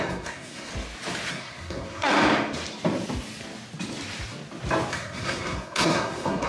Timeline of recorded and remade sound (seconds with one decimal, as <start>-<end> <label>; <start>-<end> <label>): 0.0-0.7 remade; 0.7-1.3 recorded; 1.3-2.1 remade; 2.1-4.9 recorded; 4.9-6.5 remade